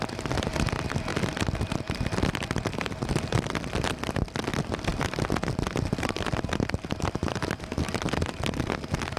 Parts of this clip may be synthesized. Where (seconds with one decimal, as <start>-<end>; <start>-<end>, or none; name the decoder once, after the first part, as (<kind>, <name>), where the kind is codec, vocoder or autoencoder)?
none